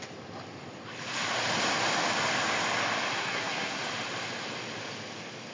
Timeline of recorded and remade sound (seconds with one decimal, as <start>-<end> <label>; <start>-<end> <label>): 0.0-3.1 recorded; 3.1-3.8 remade; 3.8-5.5 recorded